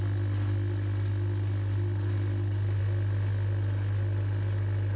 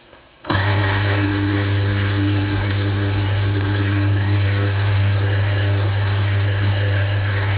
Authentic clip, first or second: first